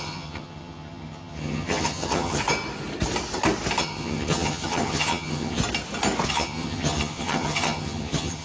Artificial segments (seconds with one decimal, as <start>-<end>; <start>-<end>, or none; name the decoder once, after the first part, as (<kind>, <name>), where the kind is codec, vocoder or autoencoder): 0.0-2.4 (vocoder, HiFi-GAN); 3.8-5.6; 6.3-8.4